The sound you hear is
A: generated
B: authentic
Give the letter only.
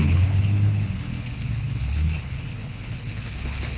A